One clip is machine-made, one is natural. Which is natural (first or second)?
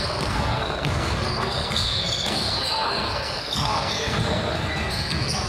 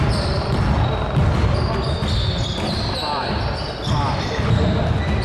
second